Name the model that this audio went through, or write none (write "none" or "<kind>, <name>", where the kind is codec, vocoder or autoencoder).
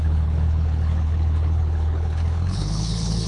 codec, HILCodec